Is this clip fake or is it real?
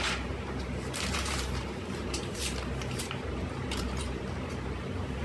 fake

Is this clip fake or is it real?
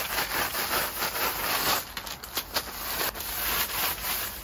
real